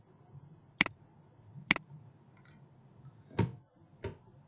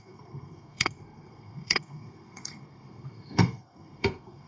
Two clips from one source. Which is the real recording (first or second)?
first